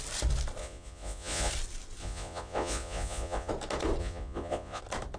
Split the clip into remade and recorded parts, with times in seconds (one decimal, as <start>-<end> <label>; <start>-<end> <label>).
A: 0.0-0.6 recorded; 0.6-1.5 remade; 1.5-2.0 recorded; 2.0-3.5 remade; 3.5-4.0 recorded; 4.0-4.8 remade; 4.8-5.2 recorded